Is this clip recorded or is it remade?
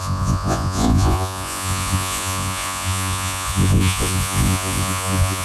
remade